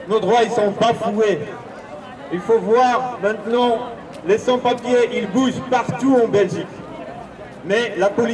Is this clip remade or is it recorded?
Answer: remade